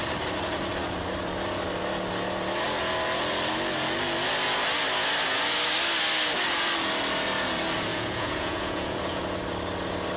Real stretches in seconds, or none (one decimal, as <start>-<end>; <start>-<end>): 0.0-7.9; 9.2-10.2